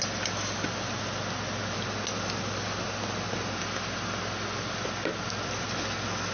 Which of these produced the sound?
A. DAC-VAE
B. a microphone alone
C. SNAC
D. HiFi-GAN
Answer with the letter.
B